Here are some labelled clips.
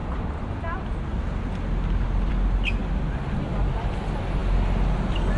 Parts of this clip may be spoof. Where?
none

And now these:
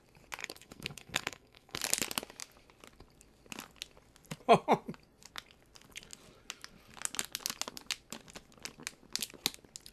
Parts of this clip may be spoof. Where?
0.4-1.8

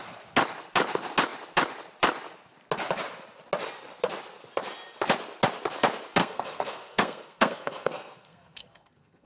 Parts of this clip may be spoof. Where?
6.2-9.3

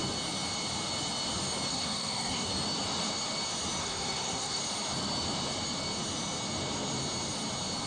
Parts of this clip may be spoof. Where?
1.7-2.5; 3.8-4.6

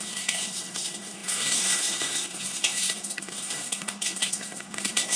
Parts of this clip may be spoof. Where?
0.0-5.2

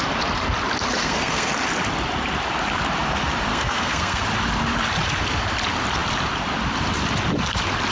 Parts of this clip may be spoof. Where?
1.0-1.5; 3.5-4.2

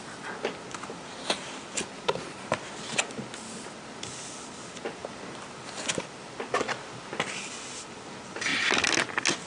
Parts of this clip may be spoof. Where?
none